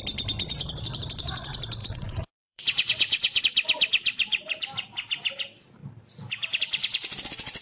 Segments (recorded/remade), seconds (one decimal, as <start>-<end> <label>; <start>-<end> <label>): 0.0-1.8 recorded; 1.8-3.4 remade; 3.4-7.6 recorded